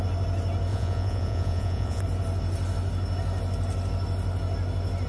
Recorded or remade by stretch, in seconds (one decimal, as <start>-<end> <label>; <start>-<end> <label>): 0.0-0.7 recorded; 0.7-2.0 remade; 2.0-5.1 recorded